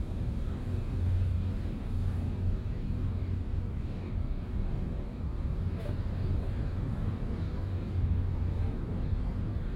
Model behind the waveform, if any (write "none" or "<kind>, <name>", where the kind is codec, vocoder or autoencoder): codec, DAC